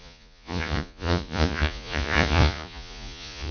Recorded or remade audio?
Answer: remade